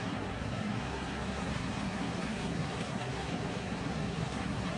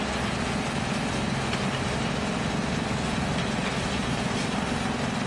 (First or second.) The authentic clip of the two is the second